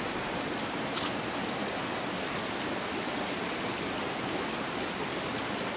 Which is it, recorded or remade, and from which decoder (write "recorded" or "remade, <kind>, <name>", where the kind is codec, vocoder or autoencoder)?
recorded